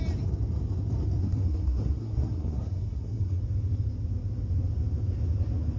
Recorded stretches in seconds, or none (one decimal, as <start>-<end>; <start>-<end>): 0.0-1.2; 3.4-5.8